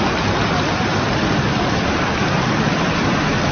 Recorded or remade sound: recorded